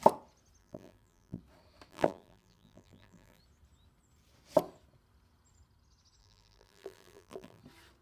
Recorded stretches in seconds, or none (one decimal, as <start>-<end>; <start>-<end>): 0.0-0.6; 1.4-1.9; 3.4-6.2; 7.6-8.0